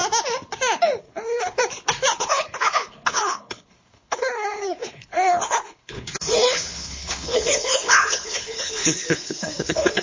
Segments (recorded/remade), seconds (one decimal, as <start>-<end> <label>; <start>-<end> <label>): 0.0-1.0 recorded; 1.0-1.6 remade; 1.6-2.1 recorded; 2.1-10.0 remade